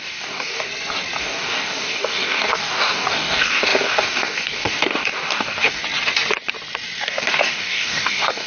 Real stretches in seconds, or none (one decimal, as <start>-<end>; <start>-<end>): 0.7-1.2; 5.8-7.0